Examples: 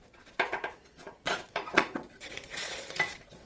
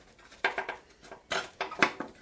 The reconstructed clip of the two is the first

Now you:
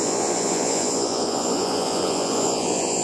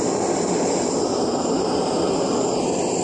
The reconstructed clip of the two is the first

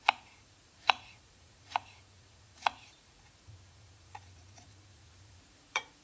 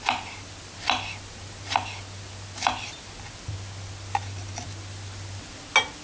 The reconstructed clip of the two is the first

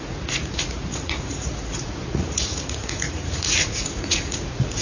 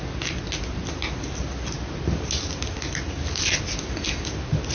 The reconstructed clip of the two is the first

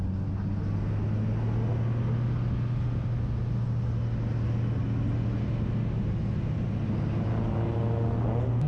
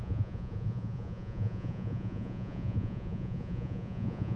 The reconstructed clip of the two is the second